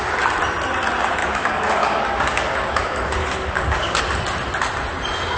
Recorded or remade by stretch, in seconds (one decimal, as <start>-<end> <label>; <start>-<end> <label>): 0.0-1.2 recorded; 1.2-4.0 remade; 4.0-5.4 recorded